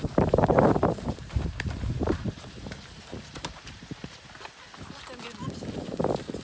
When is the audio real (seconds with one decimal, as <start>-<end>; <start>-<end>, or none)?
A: 3.8-6.4